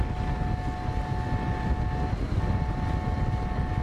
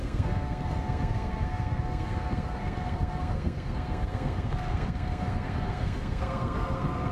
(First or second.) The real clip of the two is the first